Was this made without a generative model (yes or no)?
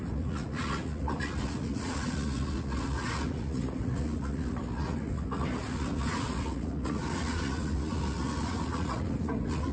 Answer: no